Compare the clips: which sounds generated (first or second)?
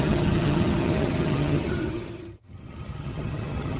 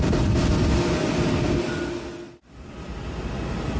first